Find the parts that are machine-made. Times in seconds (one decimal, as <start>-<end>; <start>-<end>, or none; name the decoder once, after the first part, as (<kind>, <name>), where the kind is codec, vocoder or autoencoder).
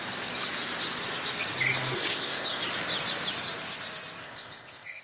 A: 2.1-2.6 (codec, ZipCodec); 4.2-5.0